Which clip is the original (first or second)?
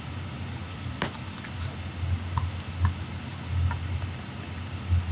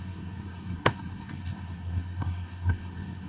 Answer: first